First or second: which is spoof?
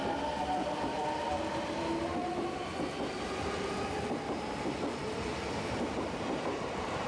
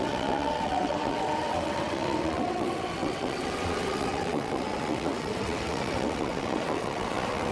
second